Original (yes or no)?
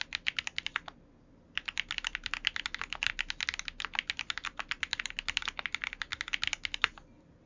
yes